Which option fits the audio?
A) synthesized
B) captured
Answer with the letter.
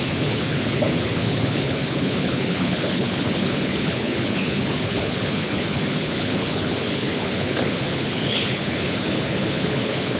A